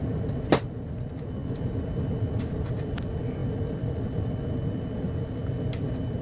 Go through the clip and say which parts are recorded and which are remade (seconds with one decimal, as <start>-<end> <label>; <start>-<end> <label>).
0.0-6.2 recorded